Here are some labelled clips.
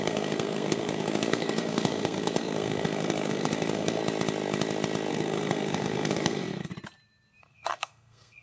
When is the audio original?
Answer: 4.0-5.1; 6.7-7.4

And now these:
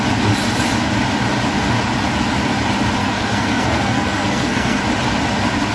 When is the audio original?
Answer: 0.0-3.0; 4.8-5.7

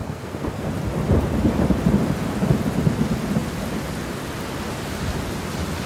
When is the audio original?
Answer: 0.7-5.9

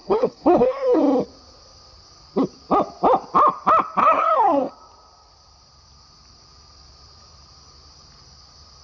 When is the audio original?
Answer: 1.0-4.0; 4.7-8.8

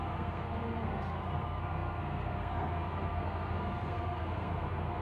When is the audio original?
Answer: none

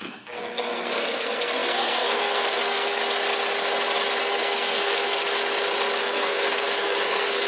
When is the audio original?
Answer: 3.0-4.2; 5.2-6.0